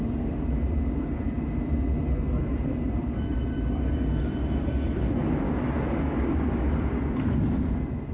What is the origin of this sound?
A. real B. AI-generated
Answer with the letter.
A